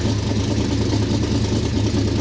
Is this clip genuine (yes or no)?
yes